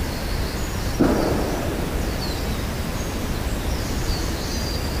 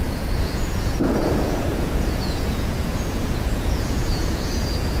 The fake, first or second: second